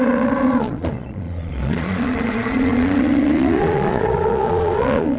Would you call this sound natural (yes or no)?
no